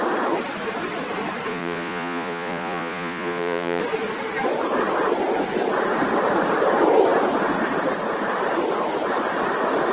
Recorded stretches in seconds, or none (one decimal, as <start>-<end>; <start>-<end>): 0.0-1.5; 3.8-9.9